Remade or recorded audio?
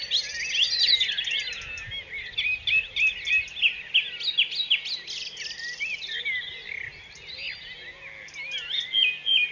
recorded